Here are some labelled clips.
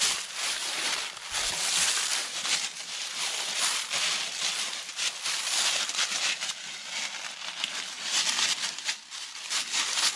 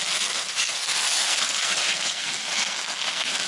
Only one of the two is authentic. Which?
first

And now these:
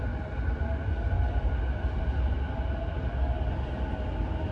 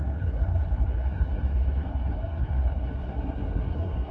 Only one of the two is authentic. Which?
first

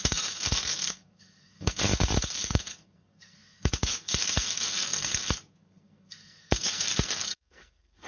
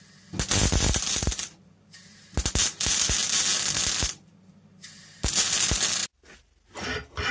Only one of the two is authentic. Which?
second